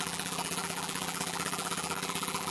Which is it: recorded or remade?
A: remade